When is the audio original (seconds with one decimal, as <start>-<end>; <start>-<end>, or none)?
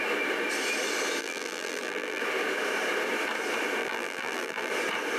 0.0-1.2; 2.2-3.8; 4.7-5.2